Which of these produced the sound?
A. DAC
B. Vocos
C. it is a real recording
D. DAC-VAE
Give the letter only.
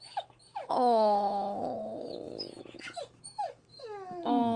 D